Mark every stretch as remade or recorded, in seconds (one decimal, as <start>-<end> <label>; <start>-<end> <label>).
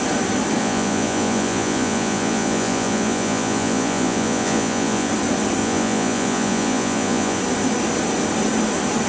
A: 0.0-0.6 recorded; 0.6-5.1 remade; 5.1-5.6 recorded; 5.6-7.4 remade; 7.4-9.1 recorded